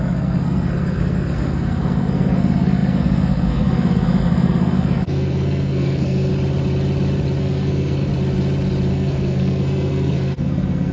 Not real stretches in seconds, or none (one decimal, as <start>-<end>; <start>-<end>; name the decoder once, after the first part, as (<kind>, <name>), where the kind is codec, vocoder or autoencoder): 0.0-6.3 (codec, SNAC); 7.4-8.1; 8.9-10.9